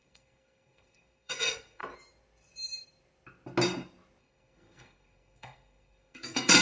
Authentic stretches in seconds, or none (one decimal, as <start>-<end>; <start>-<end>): 1.8-4.2